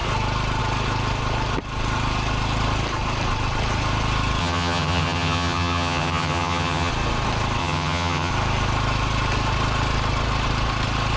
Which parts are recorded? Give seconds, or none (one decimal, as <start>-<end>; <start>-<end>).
0.0-4.4; 6.9-7.6; 8.3-11.2